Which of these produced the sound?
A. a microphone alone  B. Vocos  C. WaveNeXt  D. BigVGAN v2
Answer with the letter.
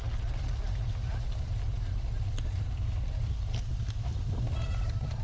A